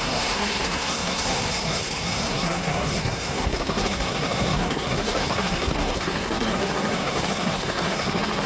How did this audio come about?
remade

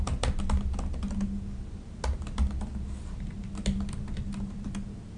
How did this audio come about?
recorded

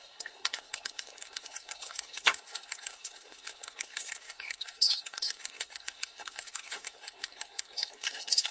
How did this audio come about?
remade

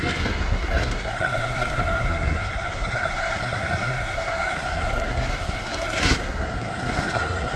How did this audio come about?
remade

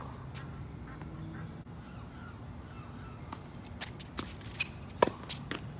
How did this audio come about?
recorded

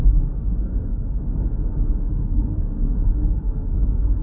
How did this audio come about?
remade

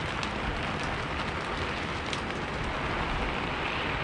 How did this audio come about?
recorded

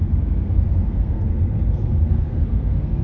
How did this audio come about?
remade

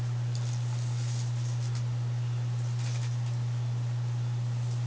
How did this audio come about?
recorded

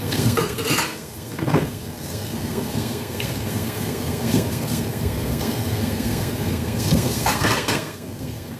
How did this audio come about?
remade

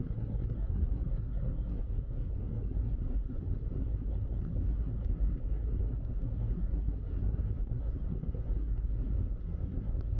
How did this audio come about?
remade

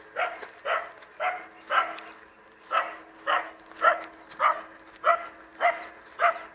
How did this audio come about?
recorded